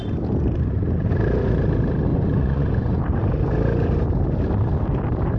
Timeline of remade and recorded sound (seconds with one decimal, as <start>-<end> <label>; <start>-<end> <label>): 0.0-2.1 recorded; 2.1-3.0 remade; 3.0-5.4 recorded